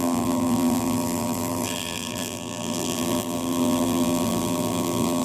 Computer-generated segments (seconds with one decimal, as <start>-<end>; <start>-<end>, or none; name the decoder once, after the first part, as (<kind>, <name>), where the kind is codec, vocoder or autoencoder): 0.0-5.2 (vocoder, BigVGAN v2)